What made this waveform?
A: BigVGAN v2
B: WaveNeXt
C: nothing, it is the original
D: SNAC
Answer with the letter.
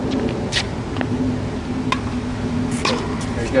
C